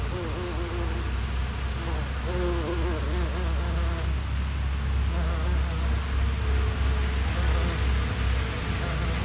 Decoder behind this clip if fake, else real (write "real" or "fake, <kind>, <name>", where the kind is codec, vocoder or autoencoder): real